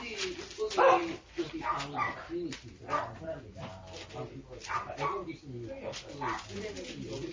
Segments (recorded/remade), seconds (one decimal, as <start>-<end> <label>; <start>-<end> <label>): 0.0-1.0 recorded; 1.0-3.8 remade; 3.8-7.3 recorded